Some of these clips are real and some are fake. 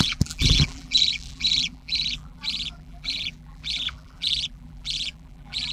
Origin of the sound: fake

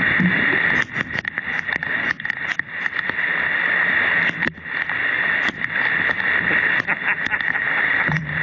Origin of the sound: fake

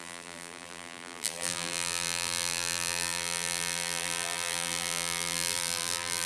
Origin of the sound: fake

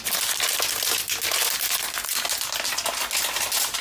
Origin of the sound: real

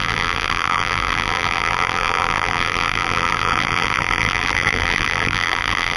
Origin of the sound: fake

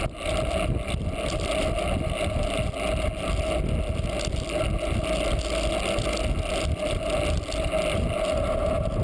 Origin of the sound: real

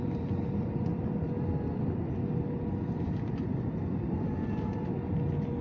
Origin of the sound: fake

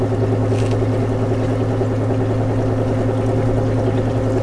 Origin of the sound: real